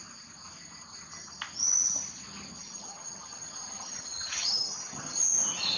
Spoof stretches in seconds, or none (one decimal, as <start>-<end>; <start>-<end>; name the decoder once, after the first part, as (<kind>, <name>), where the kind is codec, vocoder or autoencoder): 2.6-5.2 (vocoder, HiFi-GAN)